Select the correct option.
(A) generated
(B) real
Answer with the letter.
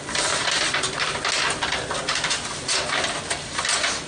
B